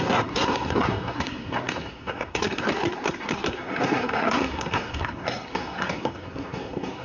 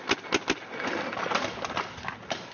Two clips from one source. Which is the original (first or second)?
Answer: second